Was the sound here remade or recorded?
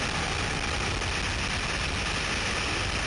recorded